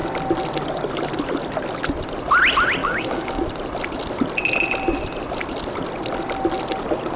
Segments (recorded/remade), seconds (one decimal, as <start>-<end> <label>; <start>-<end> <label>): 0.0-2.8 recorded; 2.8-3.4 remade; 3.4-7.2 recorded